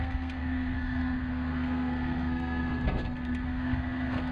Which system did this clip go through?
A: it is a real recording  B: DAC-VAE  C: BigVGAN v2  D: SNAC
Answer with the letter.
D